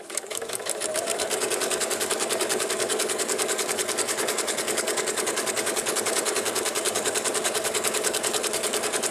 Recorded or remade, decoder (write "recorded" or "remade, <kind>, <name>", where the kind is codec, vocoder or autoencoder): remade, codec, DAC